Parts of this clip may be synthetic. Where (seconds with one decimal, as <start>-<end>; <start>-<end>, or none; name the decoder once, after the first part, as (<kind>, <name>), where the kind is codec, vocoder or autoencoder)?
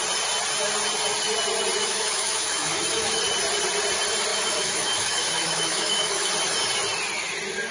1.8-3.2 (autoencoder, DAC-VAE); 4.3-6.3